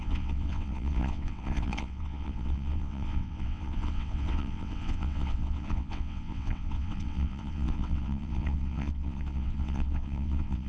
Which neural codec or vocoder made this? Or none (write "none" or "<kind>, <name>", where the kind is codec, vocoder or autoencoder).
vocoder, WaveNeXt